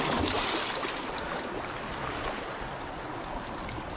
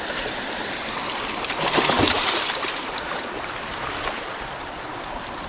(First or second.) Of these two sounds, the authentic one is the first